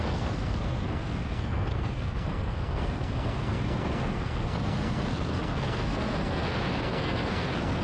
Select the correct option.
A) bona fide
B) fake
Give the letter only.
B